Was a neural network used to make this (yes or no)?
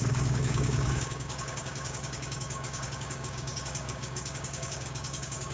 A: yes